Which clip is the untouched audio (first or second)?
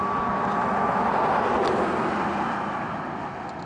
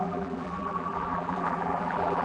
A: first